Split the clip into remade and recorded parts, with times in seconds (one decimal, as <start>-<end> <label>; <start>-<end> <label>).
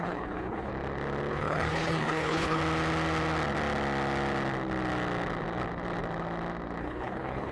0.0-0.7 remade; 0.7-1.3 recorded; 1.3-2.6 remade; 2.6-6.8 recorded; 6.8-7.5 remade